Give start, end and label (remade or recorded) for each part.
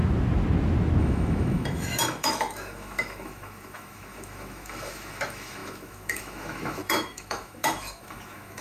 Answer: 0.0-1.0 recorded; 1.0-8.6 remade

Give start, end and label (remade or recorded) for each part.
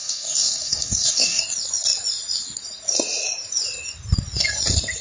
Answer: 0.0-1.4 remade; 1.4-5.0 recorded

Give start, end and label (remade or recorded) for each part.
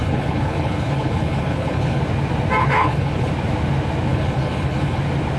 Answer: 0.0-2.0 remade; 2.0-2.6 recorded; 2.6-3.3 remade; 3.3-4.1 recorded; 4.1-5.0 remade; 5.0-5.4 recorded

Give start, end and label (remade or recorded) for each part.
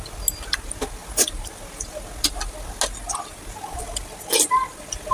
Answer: 0.0-5.1 recorded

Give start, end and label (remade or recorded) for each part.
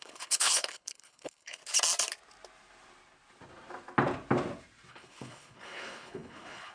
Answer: 0.0-1.6 remade; 1.6-4.9 recorded; 4.9-6.7 remade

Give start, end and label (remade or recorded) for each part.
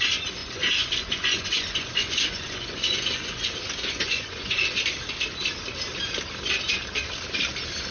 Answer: 0.0-0.4 recorded; 0.4-4.8 remade; 4.8-7.9 recorded